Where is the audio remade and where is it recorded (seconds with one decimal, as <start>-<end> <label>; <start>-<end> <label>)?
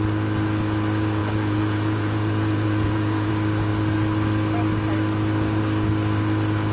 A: 0.0-1.2 recorded; 1.2-3.3 remade; 3.3-6.7 recorded